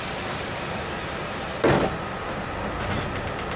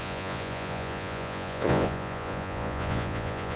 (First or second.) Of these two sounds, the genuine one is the first